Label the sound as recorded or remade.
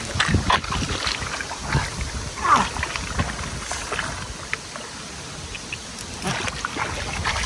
recorded